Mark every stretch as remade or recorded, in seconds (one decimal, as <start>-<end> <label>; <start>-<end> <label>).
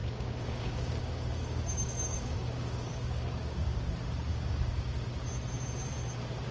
0.0-3.9 remade; 3.9-4.3 recorded; 4.3-4.9 remade; 4.9-6.5 recorded